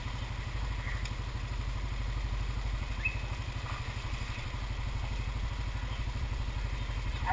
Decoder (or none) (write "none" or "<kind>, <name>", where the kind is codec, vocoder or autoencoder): none